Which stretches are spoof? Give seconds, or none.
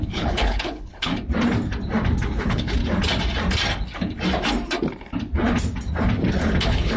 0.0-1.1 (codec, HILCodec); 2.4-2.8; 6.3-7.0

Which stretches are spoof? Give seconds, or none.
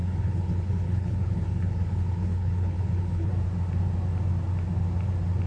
0.0-3.3 (codec, HILCodec)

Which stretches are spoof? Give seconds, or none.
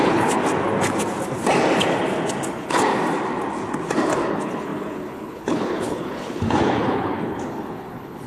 0.0-0.4 (codec, HILCodec); 2.5-2.9; 4.3-8.3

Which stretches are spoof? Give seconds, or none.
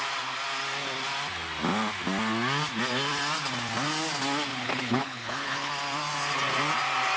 4.5-5.7 (codec, HILCodec)